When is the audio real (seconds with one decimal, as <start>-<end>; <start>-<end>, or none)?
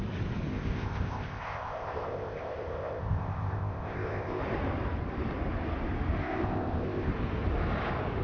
0.0-0.5; 4.4-6.2; 7.1-8.2